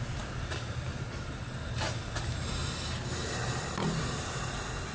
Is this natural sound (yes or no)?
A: yes